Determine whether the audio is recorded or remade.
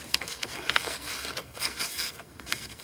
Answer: remade